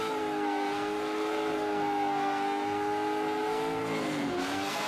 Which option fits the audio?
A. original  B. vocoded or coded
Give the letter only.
B